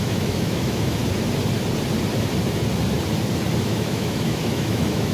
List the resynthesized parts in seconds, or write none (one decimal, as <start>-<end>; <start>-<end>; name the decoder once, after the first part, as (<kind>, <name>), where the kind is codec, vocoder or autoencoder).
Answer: 0.0-1.0 (autoencoder, DAC-VAE); 3.6-5.1